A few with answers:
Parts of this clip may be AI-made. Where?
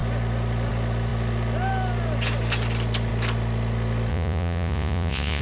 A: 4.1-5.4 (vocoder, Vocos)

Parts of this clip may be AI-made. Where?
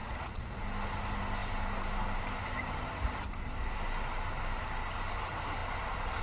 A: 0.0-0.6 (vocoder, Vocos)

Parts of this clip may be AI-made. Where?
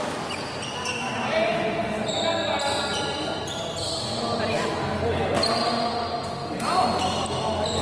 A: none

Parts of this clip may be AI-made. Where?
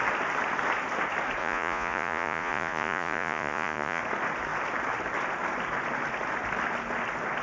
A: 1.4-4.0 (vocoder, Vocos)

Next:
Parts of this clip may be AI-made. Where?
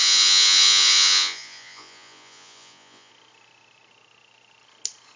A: 0.0-3.1 (vocoder, Vocos)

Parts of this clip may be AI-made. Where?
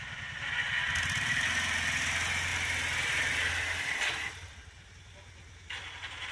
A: none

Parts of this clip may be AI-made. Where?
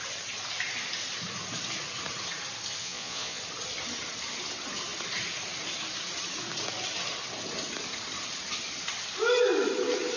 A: 2.8-3.4 (vocoder, Vocos)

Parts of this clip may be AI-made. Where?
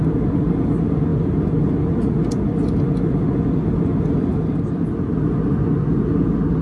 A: none